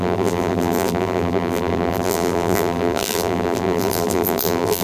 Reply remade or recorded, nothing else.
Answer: remade